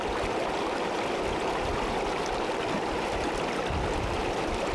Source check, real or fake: real